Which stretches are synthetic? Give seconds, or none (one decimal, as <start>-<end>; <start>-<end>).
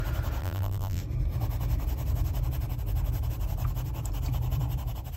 0.4-1.0